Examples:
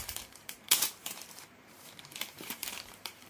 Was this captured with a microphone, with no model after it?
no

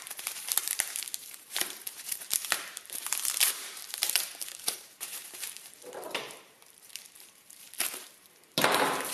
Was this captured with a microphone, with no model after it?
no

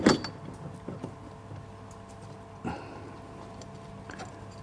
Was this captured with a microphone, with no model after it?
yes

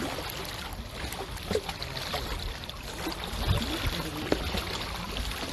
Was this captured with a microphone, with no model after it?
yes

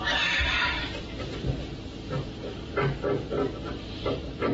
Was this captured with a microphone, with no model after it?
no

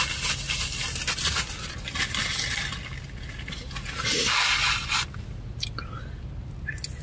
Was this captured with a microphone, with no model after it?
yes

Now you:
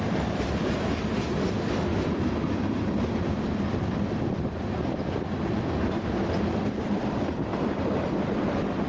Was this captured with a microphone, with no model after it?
yes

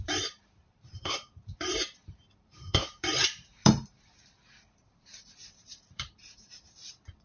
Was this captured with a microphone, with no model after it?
no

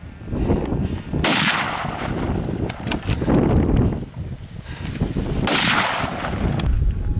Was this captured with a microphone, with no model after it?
yes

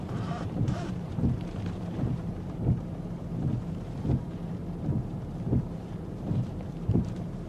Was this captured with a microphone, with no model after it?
no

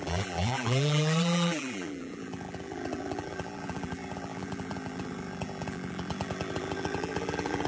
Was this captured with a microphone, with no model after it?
no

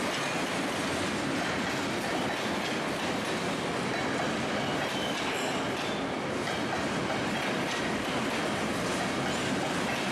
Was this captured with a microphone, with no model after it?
yes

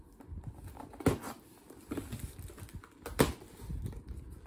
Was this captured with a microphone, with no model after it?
yes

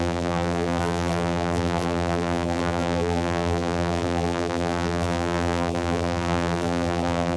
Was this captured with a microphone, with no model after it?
no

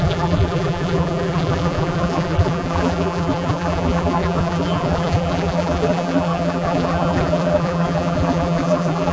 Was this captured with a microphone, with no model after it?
no